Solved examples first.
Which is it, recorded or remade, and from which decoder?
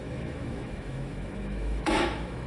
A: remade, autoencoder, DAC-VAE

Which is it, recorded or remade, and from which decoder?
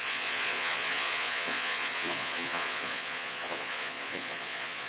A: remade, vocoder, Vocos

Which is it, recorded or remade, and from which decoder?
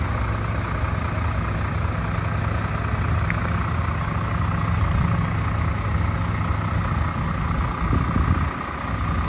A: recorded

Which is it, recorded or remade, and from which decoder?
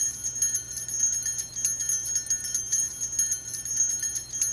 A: recorded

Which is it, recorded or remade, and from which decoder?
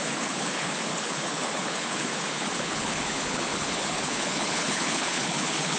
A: remade, codec, HILCodec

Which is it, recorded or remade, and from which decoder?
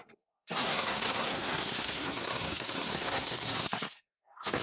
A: remade, codec, SNAC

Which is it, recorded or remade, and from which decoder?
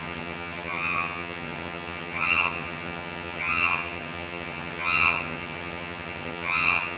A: remade, vocoder, HiFi-GAN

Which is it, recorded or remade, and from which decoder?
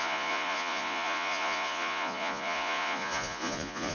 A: remade, vocoder, Vocos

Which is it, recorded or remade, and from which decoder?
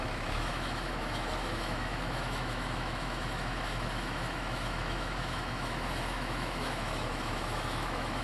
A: remade, autoencoder, DAC-VAE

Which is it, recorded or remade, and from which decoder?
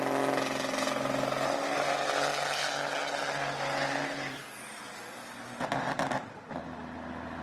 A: recorded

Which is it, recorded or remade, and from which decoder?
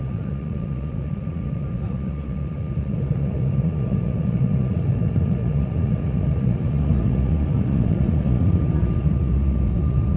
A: remade, vocoder, Vocos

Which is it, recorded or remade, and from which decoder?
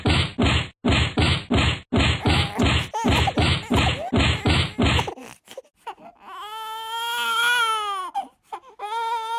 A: recorded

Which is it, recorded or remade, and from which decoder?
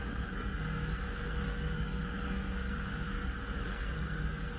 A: remade, codec, SNAC